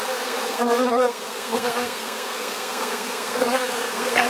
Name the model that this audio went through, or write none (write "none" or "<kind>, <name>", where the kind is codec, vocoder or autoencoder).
codec, SNAC